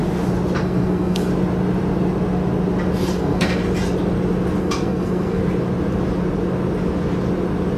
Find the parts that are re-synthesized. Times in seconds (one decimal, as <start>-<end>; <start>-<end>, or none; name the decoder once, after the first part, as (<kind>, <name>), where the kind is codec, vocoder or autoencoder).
0.6-1.3 (codec, SNAC); 3.2-3.6; 4.6-5.4